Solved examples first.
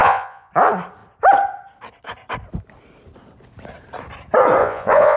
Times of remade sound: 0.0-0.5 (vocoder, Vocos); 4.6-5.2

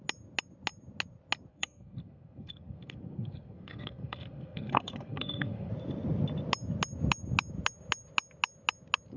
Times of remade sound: 1.5-5.7 (codec, SNAC)